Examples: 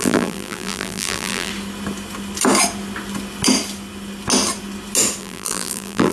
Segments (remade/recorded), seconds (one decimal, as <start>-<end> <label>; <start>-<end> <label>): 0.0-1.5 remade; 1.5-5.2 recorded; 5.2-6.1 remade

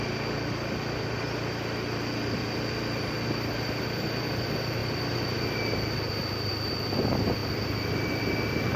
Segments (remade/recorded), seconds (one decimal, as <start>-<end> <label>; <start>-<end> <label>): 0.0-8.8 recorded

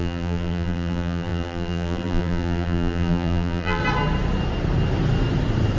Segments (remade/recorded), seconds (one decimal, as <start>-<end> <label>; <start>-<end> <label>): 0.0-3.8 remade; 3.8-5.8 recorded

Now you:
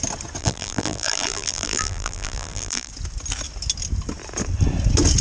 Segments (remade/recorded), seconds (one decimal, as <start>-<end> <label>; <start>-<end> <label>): 0.0-0.4 recorded; 0.4-2.9 remade; 2.9-5.2 recorded

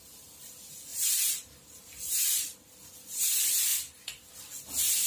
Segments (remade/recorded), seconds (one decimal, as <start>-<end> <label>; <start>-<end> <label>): 0.0-0.9 recorded; 0.9-2.9 remade; 2.9-3.7 recorded; 3.7-4.3 remade; 4.3-5.1 recorded

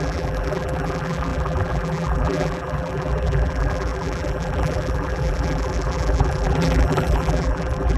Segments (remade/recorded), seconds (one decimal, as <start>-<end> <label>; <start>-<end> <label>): 0.0-8.0 remade